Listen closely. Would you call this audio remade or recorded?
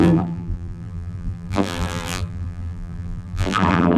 remade